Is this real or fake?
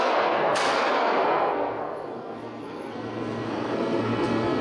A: fake